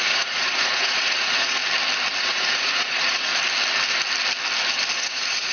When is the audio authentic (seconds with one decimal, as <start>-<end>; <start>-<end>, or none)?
1.6-2.2; 3.3-5.0